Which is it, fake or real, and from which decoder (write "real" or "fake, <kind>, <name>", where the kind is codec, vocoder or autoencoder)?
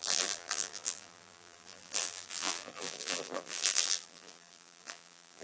fake, vocoder, BigVGAN v2